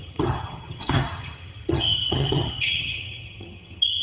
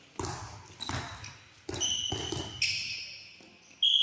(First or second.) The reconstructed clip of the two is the first